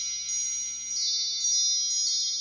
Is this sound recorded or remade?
recorded